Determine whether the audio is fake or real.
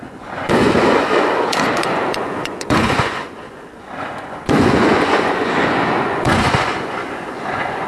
fake